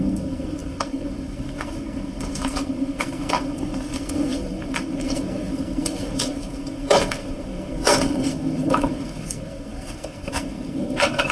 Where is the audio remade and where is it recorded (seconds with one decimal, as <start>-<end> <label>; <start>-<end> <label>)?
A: 0.0-11.3 remade